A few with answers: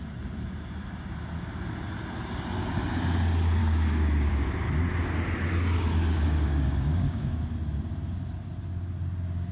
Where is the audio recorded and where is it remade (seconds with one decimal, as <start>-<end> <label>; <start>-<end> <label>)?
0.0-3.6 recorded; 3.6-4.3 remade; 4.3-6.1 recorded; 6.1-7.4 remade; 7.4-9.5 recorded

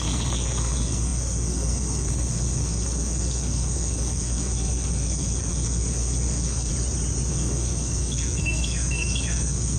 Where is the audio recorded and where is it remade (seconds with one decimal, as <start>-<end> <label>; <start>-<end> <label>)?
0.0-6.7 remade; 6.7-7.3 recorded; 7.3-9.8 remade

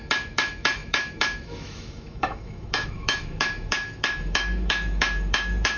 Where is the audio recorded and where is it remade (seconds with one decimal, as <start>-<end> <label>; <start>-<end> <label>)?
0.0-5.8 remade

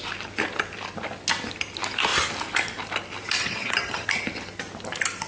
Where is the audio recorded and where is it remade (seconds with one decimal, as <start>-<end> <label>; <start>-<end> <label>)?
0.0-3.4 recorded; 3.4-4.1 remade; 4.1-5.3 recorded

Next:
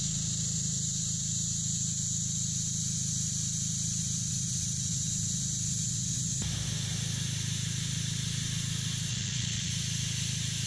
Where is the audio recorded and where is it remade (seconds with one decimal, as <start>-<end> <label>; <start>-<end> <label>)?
0.0-9.1 recorded; 9.1-9.7 remade; 9.7-10.7 recorded

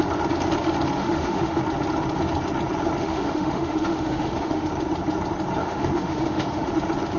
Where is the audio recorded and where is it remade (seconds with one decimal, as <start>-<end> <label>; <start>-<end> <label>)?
0.0-1.0 recorded; 1.0-1.6 remade; 1.6-3.0 recorded; 3.0-4.7 remade; 4.7-5.6 recorded; 5.6-6.7 remade; 6.7-7.2 recorded

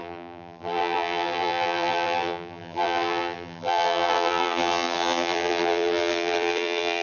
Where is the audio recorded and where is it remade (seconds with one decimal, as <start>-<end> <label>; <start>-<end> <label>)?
0.0-7.0 remade